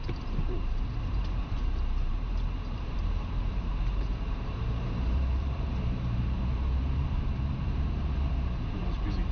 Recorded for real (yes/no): no